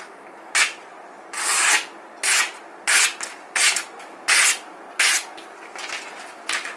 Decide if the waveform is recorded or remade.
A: recorded